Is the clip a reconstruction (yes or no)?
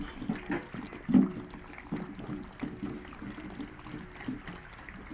no